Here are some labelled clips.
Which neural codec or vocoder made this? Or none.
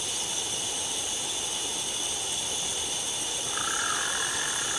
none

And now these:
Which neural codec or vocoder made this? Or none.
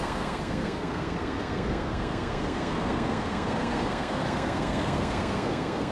codec, SNAC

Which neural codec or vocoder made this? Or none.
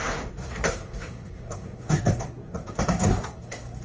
codec, SNAC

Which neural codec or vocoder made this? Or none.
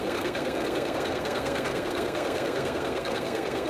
codec, SNAC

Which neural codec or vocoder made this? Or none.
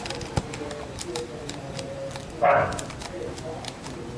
none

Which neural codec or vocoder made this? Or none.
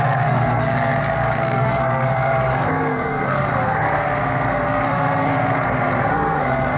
codec, SNAC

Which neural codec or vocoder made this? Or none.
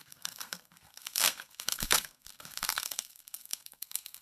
codec, SNAC